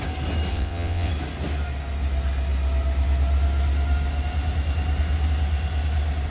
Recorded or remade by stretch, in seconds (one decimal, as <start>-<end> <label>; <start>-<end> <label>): 0.0-0.5 recorded; 0.5-1.1 remade; 1.1-6.3 recorded

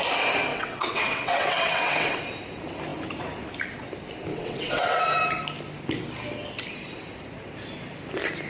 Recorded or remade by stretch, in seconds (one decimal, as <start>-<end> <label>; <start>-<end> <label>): 0.0-0.5 recorded; 0.5-2.2 remade; 2.2-4.3 recorded; 4.3-5.0 remade; 5.0-8.5 recorded

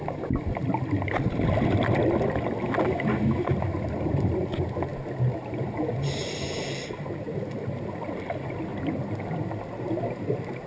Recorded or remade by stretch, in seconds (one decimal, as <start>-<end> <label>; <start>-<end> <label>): 0.0-10.7 recorded

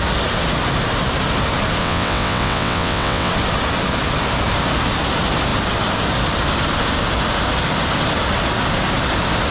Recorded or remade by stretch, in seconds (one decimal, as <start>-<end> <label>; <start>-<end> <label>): 0.0-1.8 recorded; 1.8-3.3 remade; 3.3-9.5 recorded

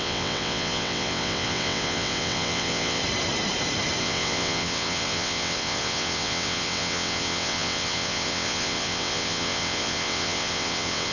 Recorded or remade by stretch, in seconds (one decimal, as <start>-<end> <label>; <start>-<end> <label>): 0.0-3.0 remade; 3.0-4.0 recorded; 4.0-11.1 remade